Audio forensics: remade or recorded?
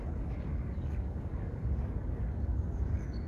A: remade